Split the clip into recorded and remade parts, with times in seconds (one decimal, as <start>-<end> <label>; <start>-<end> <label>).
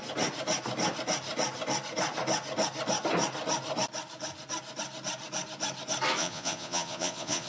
0.0-6.2 recorded; 6.2-7.5 remade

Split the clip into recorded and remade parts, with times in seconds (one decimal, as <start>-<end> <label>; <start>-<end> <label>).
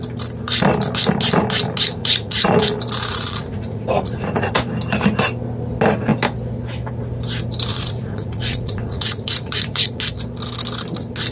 0.0-2.0 recorded; 2.0-2.6 remade; 2.6-3.1 recorded; 3.1-4.5 remade; 4.5-7.7 recorded; 7.7-10.0 remade; 10.0-11.3 recorded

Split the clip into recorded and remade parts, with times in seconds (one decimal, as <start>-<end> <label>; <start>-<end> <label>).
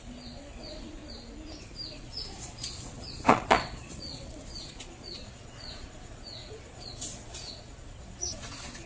0.0-1.0 remade; 1.0-1.9 recorded; 1.9-8.9 remade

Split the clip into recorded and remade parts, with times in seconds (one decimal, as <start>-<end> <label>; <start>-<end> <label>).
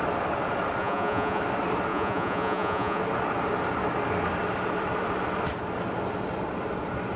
0.0-0.8 recorded; 0.8-1.4 remade; 1.4-1.9 recorded; 1.9-3.0 remade; 3.0-7.2 recorded